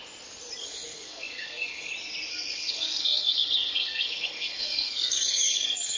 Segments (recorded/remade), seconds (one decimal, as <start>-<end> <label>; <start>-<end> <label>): 0.0-0.6 recorded; 0.6-1.9 remade; 1.9-2.3 recorded; 2.3-6.0 remade